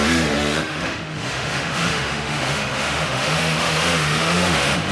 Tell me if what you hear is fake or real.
fake